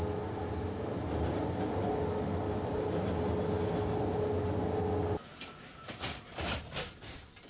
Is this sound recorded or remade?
recorded